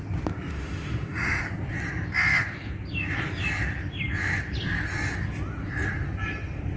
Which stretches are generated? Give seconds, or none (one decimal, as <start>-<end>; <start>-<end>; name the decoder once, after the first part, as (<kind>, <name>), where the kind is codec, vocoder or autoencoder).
0.5-1.4 (autoencoder, DAC-VAE)

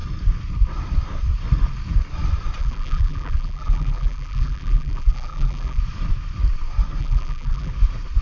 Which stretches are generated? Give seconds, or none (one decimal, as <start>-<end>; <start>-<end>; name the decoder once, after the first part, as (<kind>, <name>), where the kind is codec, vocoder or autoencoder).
2.6-5.8 (vocoder, BigVGAN v2); 7.0-7.7

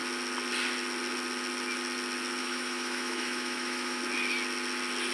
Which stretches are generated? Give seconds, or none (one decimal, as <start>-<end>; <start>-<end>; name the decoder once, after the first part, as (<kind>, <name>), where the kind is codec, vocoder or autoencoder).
2.4-4.0 (autoencoder, DAC-VAE)

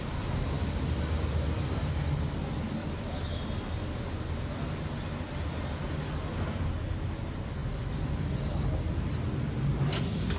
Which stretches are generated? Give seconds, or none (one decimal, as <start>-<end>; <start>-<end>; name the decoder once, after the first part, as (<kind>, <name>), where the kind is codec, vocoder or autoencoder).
2.8-3.4 (autoencoder, DAC-VAE)

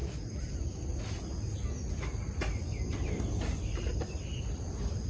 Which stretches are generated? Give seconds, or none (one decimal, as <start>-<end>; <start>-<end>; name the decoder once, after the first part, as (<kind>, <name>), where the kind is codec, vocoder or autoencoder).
none

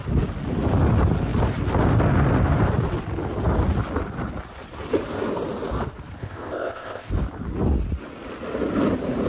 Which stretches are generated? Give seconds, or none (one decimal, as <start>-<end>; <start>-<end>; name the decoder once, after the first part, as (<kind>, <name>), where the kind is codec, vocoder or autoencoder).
6.2-7.1 (codec, ZipCodec)

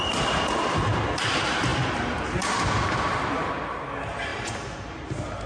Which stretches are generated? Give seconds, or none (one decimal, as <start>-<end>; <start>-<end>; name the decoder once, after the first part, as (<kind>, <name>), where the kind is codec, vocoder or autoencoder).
none